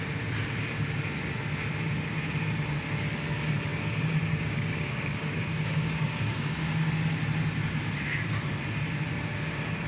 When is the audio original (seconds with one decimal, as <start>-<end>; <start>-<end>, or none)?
0.0-3.7; 6.9-9.9